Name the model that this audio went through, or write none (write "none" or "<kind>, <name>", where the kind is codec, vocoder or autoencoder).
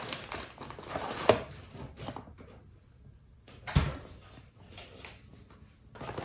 none